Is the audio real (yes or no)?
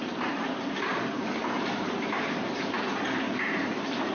no